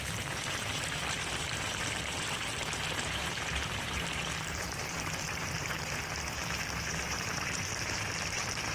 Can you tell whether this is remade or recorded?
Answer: remade